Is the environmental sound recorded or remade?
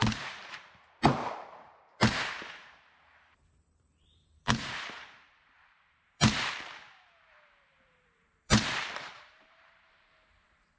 remade